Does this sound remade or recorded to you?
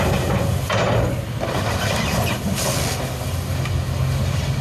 recorded